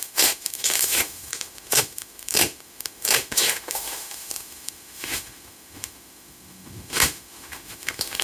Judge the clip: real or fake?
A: fake